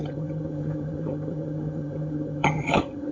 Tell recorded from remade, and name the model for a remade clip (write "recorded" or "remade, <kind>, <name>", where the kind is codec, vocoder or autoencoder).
remade, vocoder, HiFi-GAN